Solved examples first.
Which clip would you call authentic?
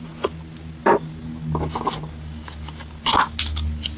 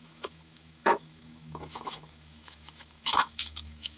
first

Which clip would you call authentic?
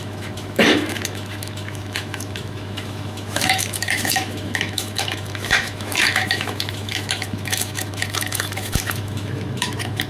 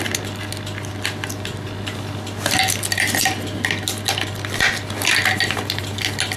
second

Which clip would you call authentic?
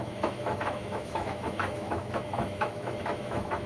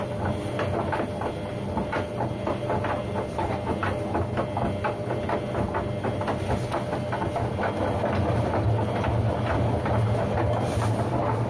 second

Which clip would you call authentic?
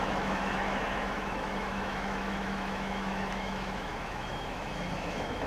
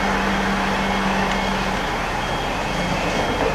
second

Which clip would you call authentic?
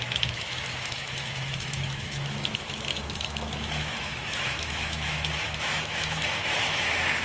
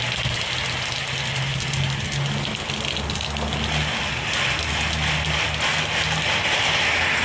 second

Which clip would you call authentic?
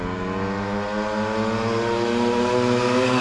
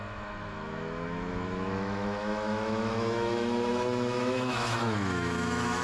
first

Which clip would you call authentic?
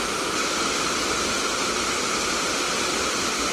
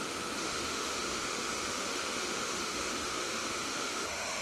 first